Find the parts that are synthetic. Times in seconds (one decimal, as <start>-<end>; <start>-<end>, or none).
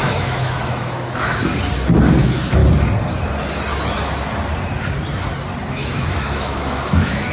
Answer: 0.0-1.4; 2.2-2.6; 5.7-7.3